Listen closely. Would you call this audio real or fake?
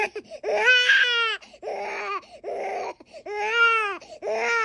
real